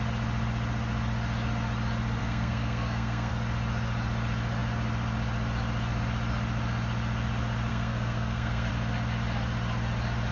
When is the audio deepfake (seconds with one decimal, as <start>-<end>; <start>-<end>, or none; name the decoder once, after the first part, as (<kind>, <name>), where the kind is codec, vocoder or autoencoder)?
2.2-3.3 (codec, SNAC); 7.7-8.7